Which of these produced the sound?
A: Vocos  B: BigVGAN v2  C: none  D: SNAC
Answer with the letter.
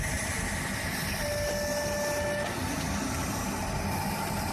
C